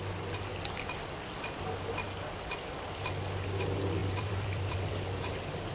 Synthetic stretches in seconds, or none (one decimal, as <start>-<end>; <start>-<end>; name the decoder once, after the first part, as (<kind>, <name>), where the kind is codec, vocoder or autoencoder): 4.0-4.9 (vocoder, BigVGAN v2)

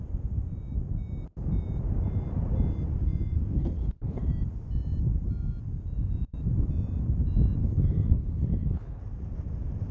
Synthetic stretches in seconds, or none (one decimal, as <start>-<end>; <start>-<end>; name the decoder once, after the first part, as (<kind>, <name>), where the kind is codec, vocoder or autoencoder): 3.6-4.3 (codec, HILCodec); 7.6-9.0

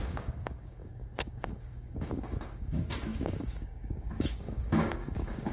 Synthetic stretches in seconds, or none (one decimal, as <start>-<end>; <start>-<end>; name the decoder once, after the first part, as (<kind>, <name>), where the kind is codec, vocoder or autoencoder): 0.0-5.5 (codec, DAC)